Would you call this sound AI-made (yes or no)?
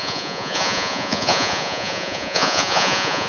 yes